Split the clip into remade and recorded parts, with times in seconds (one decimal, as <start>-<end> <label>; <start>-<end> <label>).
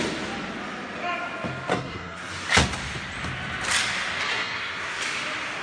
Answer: 0.0-1.7 recorded; 1.7-2.3 remade; 2.3-4.3 recorded; 4.3-5.0 remade; 5.0-5.6 recorded